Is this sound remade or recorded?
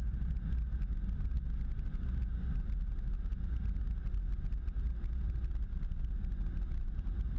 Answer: recorded